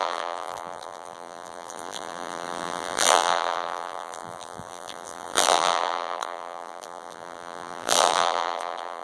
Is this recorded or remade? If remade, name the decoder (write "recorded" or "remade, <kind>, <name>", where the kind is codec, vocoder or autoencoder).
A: remade, vocoder, BigVGAN v2